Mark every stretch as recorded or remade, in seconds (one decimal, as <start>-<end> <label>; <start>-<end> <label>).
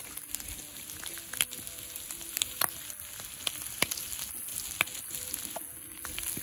0.0-6.4 recorded